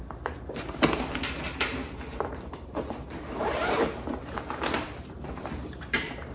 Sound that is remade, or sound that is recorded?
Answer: remade